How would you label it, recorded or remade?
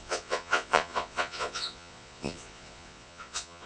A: remade